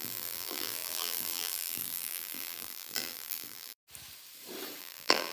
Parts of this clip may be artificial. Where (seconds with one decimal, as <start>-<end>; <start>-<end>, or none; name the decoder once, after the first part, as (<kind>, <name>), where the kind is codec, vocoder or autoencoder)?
0.0-3.8 (vocoder, BigVGAN v2); 4.8-5.3